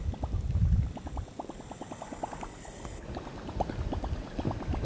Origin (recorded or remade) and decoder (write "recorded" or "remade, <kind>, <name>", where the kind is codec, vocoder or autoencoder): recorded